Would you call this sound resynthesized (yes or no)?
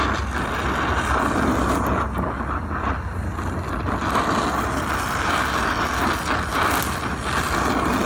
no